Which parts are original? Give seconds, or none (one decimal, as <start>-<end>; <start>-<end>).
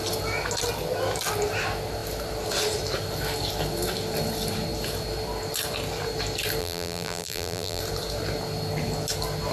0.0-6.6; 7.8-9.5